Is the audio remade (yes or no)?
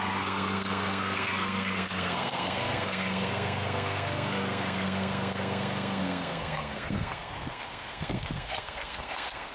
yes